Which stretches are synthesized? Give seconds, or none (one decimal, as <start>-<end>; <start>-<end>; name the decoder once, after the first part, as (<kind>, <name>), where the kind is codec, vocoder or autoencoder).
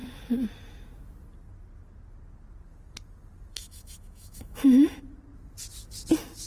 3.5-5.0 (autoencoder, DAC-VAE)